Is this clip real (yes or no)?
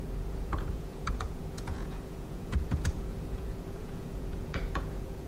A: no